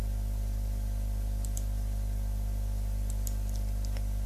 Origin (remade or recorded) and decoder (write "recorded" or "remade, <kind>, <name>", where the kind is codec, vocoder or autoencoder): recorded